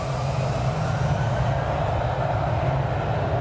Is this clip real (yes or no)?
yes